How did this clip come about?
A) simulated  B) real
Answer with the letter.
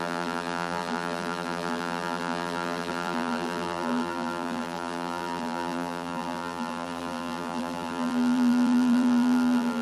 A